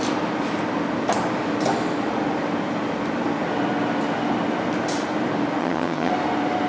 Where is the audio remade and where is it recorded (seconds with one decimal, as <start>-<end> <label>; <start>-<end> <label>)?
0.0-5.6 recorded; 5.6-6.1 remade; 6.1-6.7 recorded